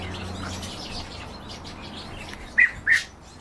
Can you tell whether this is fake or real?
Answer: real